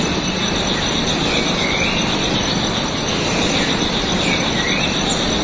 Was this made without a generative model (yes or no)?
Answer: yes